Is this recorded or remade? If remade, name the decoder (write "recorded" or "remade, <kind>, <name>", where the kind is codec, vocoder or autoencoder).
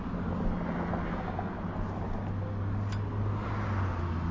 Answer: recorded